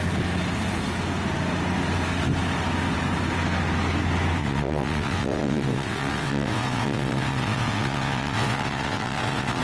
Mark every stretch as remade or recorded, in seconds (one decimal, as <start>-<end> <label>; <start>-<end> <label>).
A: 0.0-4.4 recorded; 4.4-9.6 remade